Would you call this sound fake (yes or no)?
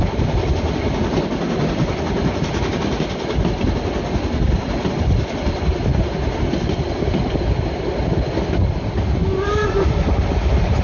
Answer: no